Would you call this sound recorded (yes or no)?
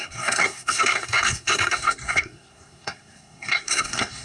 no